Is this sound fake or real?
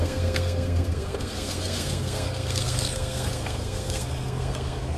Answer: fake